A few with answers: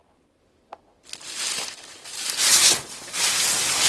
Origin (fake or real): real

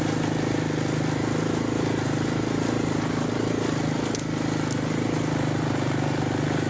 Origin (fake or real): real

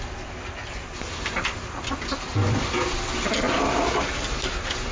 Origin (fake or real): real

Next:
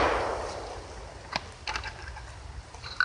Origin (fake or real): real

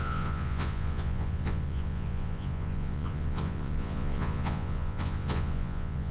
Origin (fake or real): fake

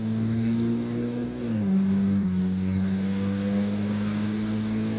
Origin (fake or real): fake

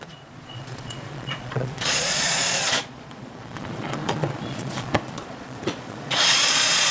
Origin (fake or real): fake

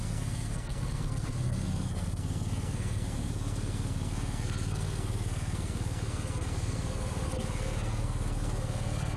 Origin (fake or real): fake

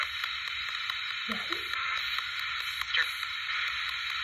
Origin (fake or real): real